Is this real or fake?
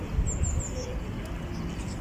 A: real